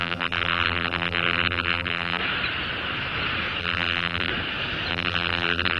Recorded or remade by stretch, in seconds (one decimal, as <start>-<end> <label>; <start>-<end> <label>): 0.0-2.2 remade; 2.2-3.6 recorded; 3.6-4.3 remade; 4.3-4.9 recorded; 4.9-5.8 remade